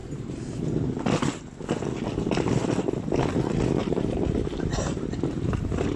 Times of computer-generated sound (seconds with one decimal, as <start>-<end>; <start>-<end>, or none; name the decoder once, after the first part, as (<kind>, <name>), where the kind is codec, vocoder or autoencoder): 0.0-0.9 (vocoder, BigVGAN v2); 3.8-5.5